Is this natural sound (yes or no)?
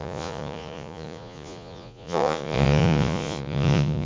no